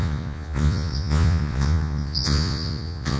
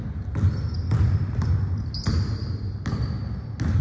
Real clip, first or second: second